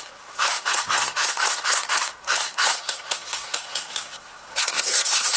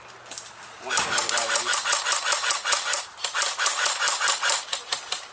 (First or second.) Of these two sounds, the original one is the second